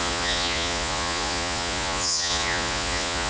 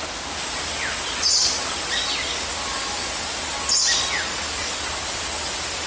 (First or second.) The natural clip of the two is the second